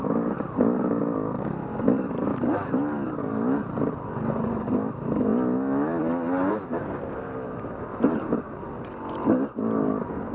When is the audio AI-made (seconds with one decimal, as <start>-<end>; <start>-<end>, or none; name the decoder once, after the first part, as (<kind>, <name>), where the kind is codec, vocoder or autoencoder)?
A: none